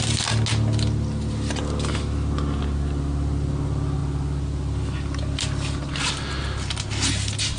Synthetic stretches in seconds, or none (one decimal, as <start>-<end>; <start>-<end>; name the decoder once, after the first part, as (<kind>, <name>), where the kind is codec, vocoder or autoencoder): none

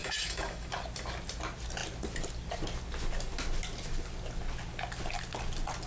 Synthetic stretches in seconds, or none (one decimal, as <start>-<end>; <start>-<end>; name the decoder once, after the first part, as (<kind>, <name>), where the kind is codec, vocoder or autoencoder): 0.0-0.7 (autoencoder, DAC-VAE)

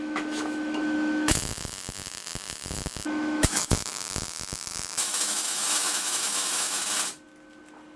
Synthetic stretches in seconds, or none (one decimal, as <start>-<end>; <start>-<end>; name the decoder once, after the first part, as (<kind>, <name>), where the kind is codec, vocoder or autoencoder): 0.0-6.8 (autoencoder, DAC-VAE)